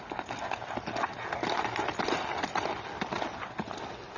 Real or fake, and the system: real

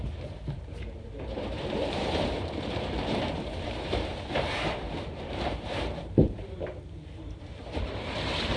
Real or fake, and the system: fake, vocoder, BigVGAN v2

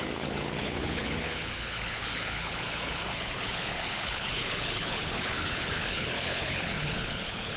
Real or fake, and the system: fake, codec, HILCodec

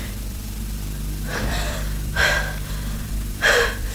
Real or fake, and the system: fake, vocoder, BigVGAN v2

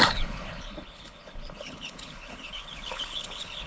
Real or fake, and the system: fake, codec, HILCodec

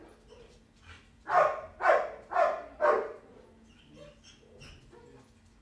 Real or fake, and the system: real